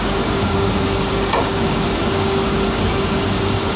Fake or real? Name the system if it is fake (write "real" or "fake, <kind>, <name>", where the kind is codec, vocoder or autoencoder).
fake, codec, DAC